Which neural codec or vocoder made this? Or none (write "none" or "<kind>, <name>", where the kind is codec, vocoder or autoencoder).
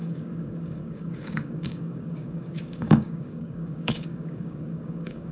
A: codec, DAC